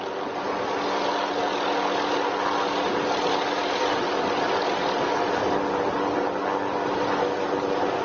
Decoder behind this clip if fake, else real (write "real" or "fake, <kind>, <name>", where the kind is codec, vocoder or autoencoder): real